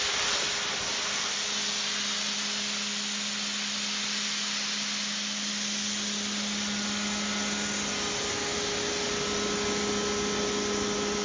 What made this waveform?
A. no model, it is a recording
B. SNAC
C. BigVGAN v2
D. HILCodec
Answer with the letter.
A